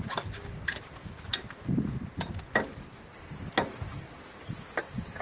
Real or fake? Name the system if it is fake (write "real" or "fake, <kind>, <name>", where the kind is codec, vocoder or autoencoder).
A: real